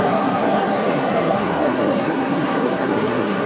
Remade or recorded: remade